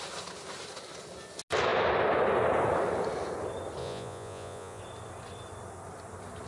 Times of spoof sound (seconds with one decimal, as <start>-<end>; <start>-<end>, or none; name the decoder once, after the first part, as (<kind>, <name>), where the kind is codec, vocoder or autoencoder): 3.8-4.8 (vocoder, Vocos)